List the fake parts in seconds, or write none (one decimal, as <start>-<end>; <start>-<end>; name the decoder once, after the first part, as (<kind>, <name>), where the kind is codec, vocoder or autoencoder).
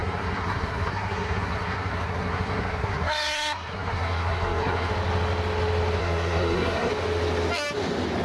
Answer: 0.0-4.9 (codec, SNAC); 6.0-6.9